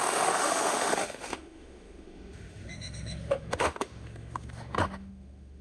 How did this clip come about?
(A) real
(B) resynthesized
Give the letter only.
B